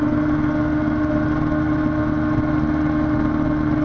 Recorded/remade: recorded